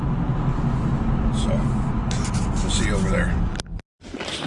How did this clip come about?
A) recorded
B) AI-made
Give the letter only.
A